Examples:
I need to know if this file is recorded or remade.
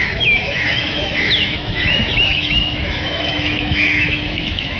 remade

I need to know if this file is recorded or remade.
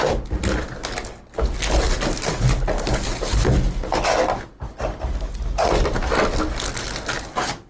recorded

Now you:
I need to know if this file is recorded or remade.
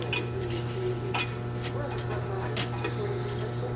recorded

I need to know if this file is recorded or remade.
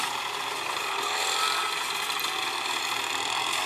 recorded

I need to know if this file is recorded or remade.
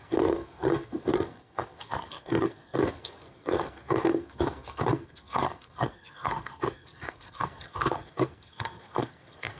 remade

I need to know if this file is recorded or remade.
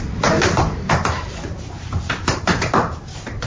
remade